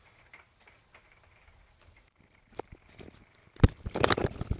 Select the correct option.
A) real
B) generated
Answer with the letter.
A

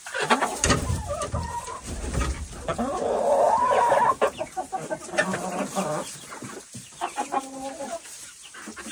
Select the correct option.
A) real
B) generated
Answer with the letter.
B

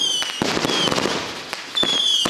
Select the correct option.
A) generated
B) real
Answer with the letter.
B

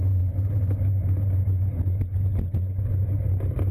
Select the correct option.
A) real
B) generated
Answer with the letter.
A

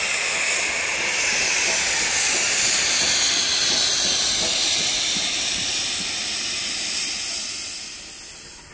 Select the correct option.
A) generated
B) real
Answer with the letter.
B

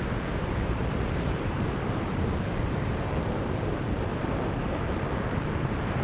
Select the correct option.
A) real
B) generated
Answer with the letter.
B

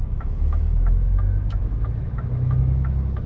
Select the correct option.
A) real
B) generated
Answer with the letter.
B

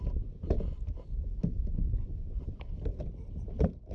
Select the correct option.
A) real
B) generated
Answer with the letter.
A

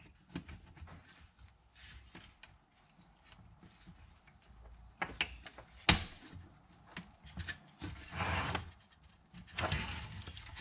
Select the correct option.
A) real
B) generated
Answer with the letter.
A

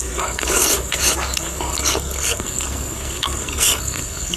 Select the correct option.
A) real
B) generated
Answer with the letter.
B